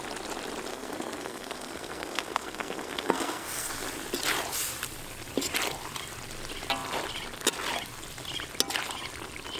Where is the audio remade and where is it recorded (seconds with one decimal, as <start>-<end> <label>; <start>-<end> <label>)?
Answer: 0.0-0.7 recorded; 0.7-3.7 remade; 3.7-9.6 recorded